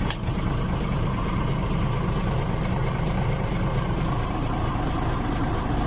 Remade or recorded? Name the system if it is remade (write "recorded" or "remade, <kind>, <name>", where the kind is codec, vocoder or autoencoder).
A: remade, vocoder, BigVGAN v2